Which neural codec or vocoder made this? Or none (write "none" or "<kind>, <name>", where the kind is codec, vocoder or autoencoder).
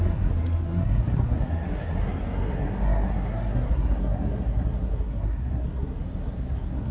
codec, SNAC